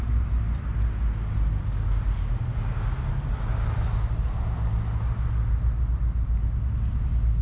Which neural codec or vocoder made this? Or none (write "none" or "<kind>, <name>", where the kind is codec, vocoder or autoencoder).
none